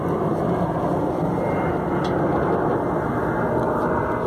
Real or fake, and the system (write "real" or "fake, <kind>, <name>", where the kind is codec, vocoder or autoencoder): real